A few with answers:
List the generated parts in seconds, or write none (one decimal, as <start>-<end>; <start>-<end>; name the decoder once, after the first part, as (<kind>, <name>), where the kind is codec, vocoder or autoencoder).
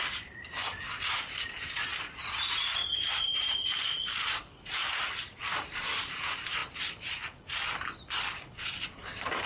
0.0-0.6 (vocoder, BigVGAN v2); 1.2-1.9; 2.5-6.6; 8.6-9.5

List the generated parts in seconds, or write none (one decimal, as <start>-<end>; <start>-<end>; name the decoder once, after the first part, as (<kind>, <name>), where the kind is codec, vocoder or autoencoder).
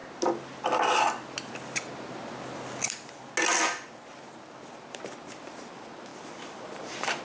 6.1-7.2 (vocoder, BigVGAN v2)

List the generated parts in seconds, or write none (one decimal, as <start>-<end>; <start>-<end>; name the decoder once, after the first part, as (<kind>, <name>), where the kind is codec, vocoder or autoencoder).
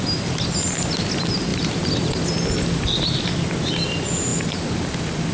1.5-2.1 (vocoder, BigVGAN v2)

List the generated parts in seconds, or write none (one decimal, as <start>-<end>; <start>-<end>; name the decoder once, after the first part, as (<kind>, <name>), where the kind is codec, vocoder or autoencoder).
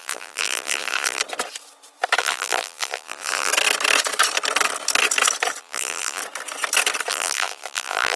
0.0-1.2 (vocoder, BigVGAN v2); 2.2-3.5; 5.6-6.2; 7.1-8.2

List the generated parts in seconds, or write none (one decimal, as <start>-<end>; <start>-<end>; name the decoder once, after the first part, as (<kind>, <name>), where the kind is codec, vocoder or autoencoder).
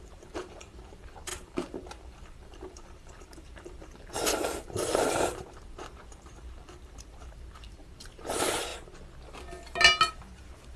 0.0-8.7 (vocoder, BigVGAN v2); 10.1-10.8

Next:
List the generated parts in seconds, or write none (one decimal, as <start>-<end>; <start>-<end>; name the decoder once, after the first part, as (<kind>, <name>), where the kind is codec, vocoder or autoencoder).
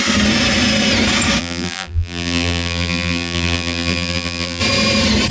1.4-4.6 (vocoder, BigVGAN v2)